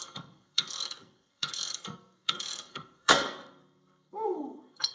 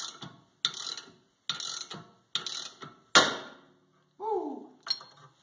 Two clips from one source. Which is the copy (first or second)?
first